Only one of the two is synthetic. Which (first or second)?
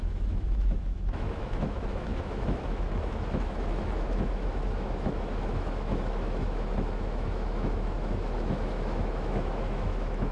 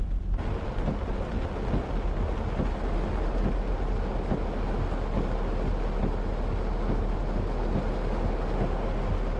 first